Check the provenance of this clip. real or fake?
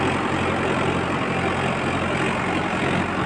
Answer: real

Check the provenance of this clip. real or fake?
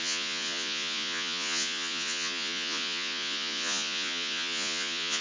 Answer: fake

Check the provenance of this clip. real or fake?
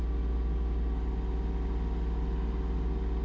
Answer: real